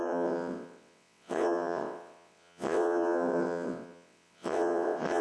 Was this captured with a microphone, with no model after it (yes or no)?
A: no